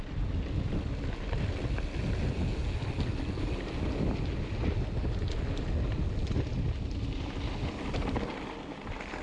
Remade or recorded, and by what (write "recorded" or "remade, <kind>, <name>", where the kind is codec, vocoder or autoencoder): recorded